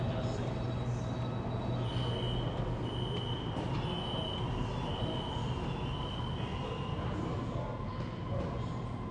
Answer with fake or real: real